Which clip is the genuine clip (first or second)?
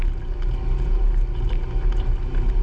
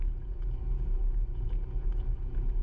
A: first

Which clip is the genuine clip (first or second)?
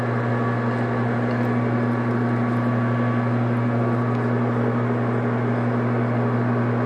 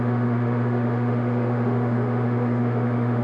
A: first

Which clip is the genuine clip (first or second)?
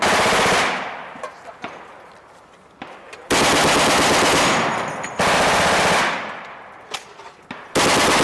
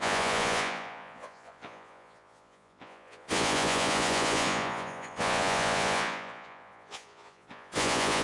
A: first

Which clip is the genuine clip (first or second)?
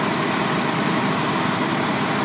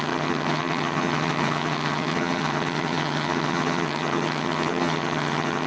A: first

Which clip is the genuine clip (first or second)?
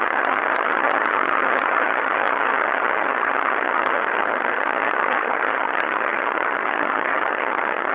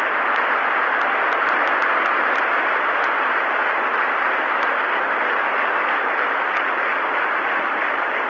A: second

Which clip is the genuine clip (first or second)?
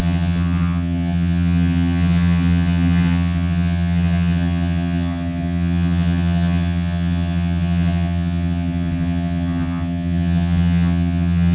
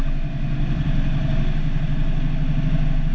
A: second